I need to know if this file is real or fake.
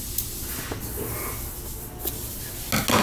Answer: real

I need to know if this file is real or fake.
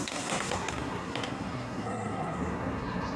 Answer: fake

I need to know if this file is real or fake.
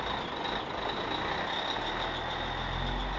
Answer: real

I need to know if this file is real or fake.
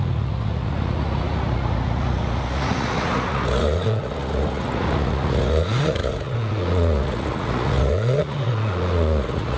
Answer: fake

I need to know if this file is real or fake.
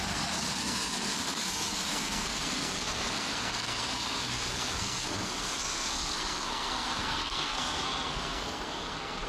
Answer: fake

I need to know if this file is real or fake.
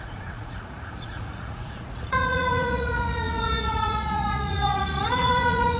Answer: fake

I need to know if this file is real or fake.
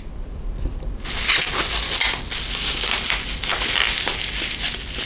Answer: real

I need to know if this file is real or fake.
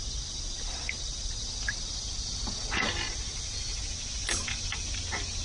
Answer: real